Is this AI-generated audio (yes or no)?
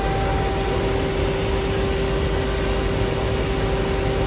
no